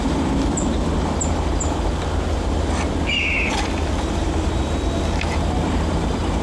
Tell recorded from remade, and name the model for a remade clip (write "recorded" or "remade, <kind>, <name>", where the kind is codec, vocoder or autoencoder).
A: recorded